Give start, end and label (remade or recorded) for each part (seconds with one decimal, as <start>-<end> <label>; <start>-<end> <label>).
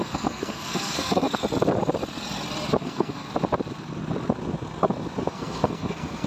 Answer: 0.0-1.4 remade; 1.4-2.8 recorded; 2.8-3.3 remade; 3.3-5.3 recorded; 5.3-6.3 remade